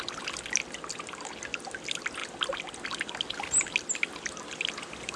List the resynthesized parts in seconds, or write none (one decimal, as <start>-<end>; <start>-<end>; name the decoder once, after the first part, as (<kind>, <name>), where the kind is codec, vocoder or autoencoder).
none